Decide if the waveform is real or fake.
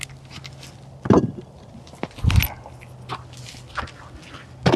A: real